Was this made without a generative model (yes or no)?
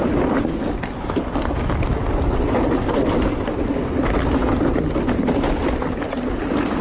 yes